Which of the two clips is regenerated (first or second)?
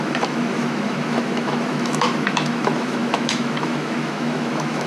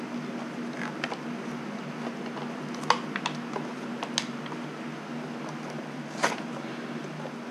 first